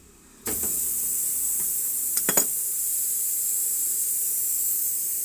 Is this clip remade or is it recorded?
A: remade